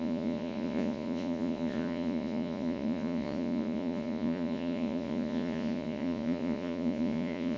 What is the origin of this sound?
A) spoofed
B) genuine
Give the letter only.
A